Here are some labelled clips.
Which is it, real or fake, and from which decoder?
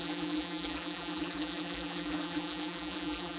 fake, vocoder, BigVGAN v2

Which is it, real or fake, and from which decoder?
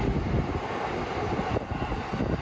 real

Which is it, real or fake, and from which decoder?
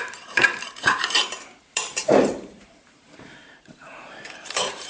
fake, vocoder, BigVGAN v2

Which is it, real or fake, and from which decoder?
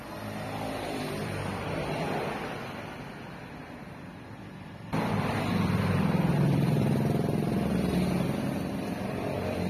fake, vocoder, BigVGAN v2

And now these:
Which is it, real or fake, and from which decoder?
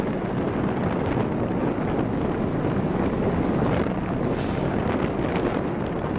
real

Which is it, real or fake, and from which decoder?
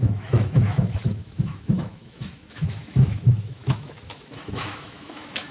fake, autoencoder, DAC-VAE